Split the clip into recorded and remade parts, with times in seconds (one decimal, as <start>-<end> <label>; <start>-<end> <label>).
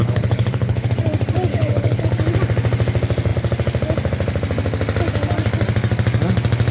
0.0-0.9 remade; 0.9-1.5 recorded; 1.5-2.0 remade; 2.0-6.7 recorded